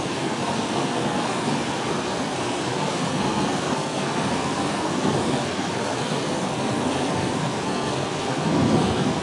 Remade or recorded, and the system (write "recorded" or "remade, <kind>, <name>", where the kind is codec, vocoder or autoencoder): remade, codec, SNAC